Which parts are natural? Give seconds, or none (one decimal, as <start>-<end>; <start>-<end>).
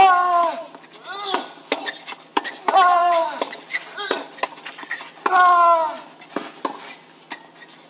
0.0-2.3; 4.1-7.9